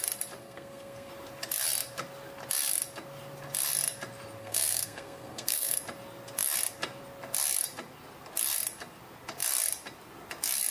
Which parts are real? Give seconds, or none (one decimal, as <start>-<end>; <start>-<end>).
0.0-0.4; 1.1-4.4; 5.8-10.7